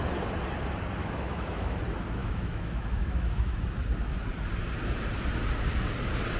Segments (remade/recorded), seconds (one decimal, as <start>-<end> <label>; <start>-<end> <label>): 0.0-1.0 recorded; 1.0-1.8 remade; 1.8-2.2 recorded; 2.2-3.6 remade; 3.6-6.4 recorded